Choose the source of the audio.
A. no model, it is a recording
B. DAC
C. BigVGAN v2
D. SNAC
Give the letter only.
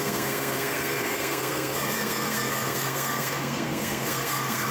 D